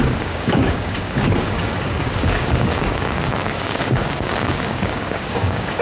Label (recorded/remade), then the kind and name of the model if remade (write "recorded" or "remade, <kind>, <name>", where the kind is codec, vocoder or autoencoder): remade, codec, DAC